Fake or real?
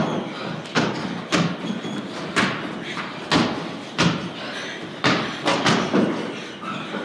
real